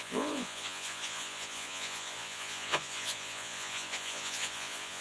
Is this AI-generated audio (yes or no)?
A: yes